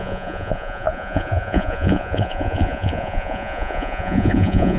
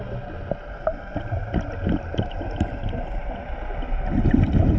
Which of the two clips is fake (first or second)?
first